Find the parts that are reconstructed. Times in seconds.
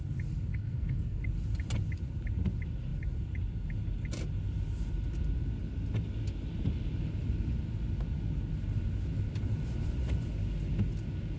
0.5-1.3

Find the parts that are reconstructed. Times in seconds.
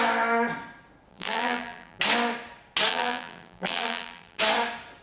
1.1-2.0; 2.9-4.4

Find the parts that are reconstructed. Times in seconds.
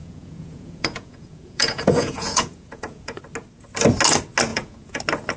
0.0-3.2; 4.5-5.0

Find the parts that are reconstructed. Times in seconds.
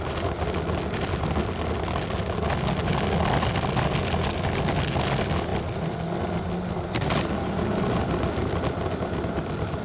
none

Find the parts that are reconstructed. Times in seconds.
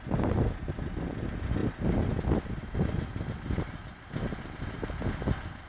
none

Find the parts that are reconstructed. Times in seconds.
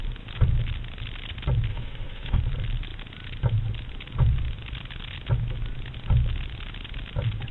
1.7-2.4